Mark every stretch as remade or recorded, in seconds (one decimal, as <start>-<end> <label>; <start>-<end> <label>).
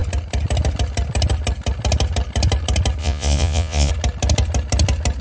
0.0-3.0 recorded; 3.0-3.9 remade; 3.9-5.2 recorded